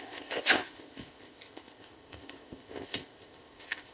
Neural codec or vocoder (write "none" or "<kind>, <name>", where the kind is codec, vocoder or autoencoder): codec, ZipCodec